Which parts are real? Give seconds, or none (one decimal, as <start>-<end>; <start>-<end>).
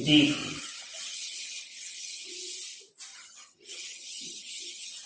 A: 0.0-0.4; 2.3-3.1